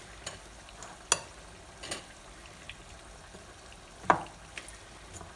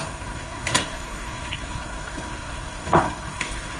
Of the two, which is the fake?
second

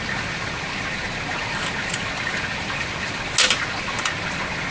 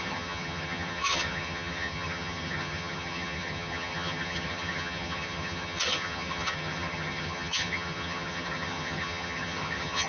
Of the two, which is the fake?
second